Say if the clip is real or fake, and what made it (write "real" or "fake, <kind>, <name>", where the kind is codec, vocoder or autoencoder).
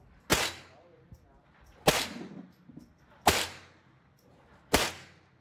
real